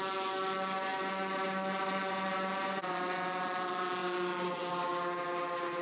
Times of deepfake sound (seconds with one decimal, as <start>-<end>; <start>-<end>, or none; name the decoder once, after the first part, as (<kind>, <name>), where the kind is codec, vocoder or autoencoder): none